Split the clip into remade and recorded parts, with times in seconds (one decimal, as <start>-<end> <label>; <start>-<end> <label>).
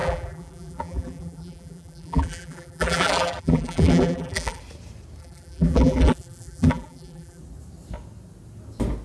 0.0-4.6 remade; 4.6-5.2 recorded; 5.2-7.4 remade; 7.4-9.0 recorded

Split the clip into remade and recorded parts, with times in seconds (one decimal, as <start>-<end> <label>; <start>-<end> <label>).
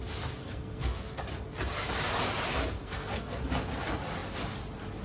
0.0-0.4 recorded; 0.4-1.2 remade; 1.2-2.8 recorded; 2.8-3.4 remade; 3.4-5.0 recorded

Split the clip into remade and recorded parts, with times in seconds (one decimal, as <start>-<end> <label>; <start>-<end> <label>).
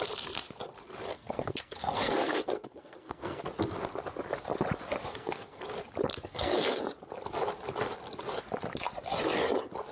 0.0-1.1 recorded; 1.1-3.4 remade; 3.4-5.1 recorded; 5.1-5.6 remade; 5.6-6.1 recorded; 6.1-6.8 remade; 6.8-9.9 recorded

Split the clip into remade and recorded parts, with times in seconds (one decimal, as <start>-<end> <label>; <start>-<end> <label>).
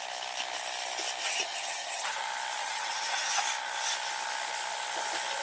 0.0-1.2 recorded; 1.2-2.2 remade; 2.2-2.6 recorded; 2.6-3.4 remade; 3.4-5.4 recorded